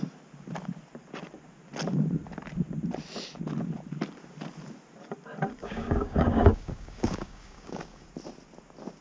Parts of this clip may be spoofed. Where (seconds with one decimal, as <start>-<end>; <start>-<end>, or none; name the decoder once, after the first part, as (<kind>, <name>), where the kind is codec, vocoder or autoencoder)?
5.6-8.1 (codec, DAC)